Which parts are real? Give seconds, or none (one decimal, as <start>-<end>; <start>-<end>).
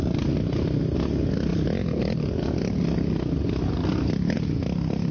0.0-5.1